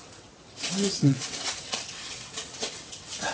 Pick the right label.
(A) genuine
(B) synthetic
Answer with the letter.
B